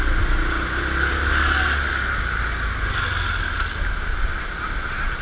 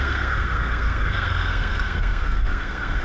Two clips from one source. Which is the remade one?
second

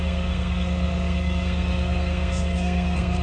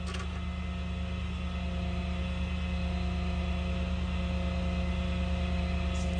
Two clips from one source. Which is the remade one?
first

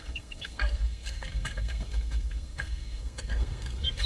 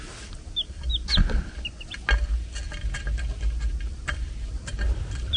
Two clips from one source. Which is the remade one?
first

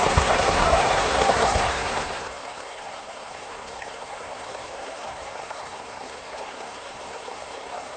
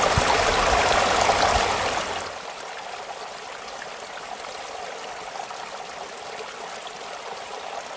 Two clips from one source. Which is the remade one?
first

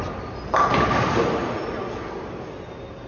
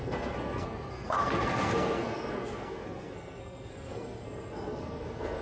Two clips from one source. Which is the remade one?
second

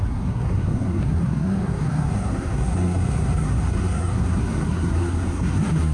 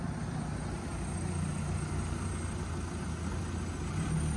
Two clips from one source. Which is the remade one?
first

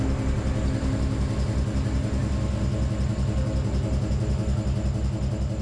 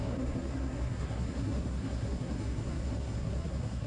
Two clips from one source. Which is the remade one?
second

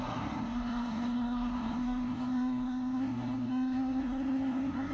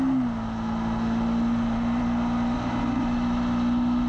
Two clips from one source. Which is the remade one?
first